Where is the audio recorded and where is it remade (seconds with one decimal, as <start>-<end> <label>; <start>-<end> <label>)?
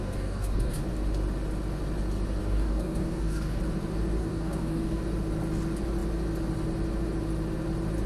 0.0-0.8 remade; 0.8-2.4 recorded; 2.4-3.6 remade; 3.6-4.2 recorded; 4.2-5.0 remade; 5.0-8.1 recorded